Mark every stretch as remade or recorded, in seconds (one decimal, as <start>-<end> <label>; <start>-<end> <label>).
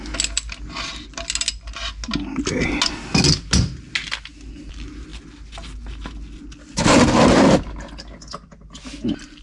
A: 0.0-9.4 recorded